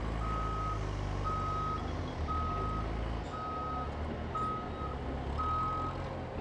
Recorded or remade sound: recorded